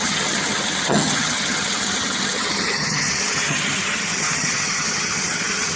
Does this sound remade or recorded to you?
remade